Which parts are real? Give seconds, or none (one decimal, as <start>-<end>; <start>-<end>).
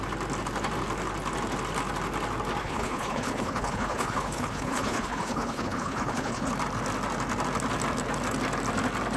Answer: 0.0-2.6; 6.5-9.2